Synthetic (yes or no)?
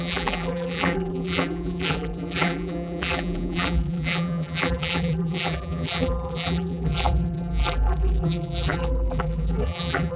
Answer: yes